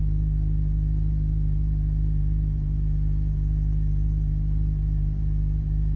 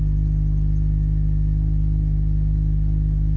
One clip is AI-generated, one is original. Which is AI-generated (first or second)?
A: first